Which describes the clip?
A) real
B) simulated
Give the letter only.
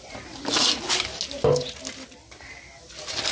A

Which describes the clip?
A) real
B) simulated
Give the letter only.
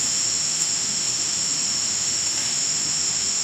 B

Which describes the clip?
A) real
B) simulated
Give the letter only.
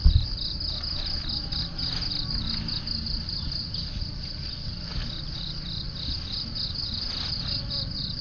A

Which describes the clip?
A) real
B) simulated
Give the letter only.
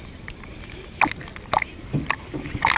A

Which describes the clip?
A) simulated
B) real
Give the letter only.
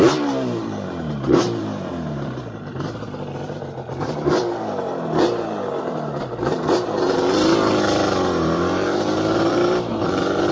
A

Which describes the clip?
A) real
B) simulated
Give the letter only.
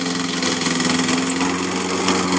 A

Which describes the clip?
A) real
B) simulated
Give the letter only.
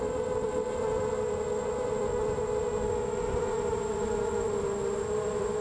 A